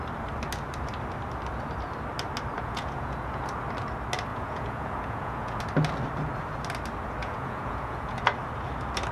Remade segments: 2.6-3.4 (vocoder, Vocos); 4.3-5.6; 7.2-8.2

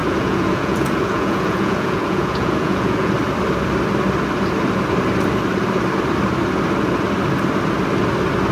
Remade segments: 0.0-3.1 (vocoder, Vocos)

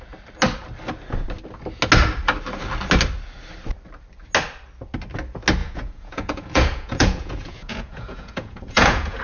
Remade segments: 5.6-9.2 (vocoder, Vocos)

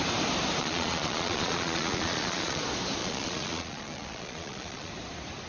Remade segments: 0.6-2.6 (vocoder, Vocos); 3.0-4.9